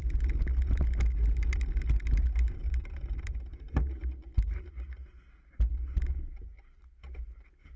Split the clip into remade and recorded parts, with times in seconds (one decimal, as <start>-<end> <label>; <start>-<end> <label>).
0.0-2.6 recorded; 2.6-5.2 remade; 5.2-7.8 recorded